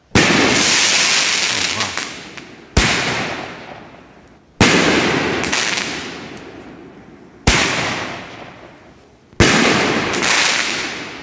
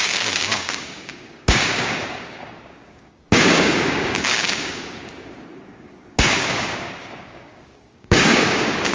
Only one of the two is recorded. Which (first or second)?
first